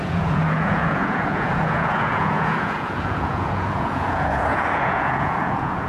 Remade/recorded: remade